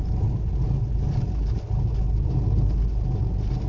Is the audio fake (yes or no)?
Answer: no